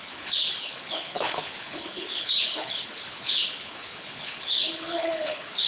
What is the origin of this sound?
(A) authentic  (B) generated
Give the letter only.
B